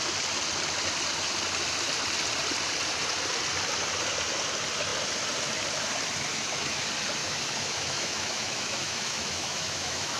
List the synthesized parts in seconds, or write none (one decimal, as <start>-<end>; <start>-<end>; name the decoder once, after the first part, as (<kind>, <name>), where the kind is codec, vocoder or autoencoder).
6.3-6.8 (autoencoder, DAC-VAE); 7.2-10.2